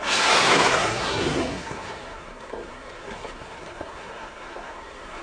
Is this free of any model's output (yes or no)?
no